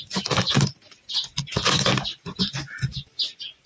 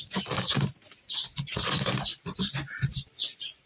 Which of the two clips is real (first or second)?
first